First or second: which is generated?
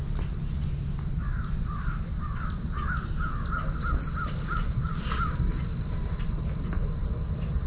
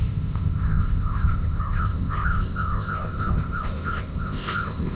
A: second